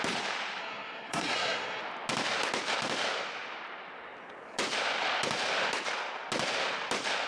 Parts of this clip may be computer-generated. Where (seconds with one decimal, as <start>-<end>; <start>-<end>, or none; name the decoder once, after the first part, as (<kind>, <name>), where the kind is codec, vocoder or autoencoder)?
0.6-1.8 (codec, SNAC)